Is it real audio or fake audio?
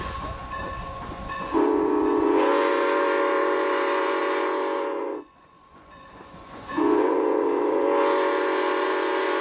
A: fake